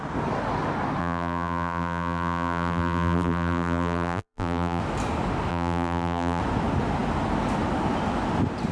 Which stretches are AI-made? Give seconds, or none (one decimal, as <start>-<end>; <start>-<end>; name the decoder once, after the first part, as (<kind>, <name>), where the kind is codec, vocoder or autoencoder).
1.0-4.8 (vocoder, BigVGAN v2); 5.5-6.4